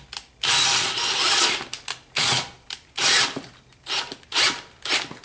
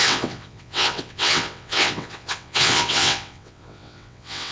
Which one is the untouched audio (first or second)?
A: first